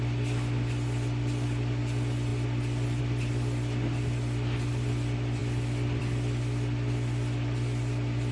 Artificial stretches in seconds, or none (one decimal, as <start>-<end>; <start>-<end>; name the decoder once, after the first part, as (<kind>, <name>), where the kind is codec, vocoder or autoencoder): none